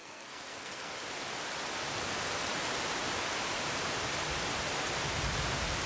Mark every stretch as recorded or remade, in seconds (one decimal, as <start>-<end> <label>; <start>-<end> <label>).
0.0-0.9 remade; 0.9-5.9 recorded